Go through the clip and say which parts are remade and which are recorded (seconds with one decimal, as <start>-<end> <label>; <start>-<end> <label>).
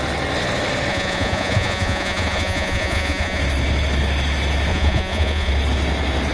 0.0-0.9 recorded; 0.9-3.4 remade; 3.4-4.7 recorded; 4.7-5.5 remade; 5.5-6.3 recorded